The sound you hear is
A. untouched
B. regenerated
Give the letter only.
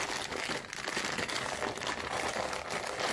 A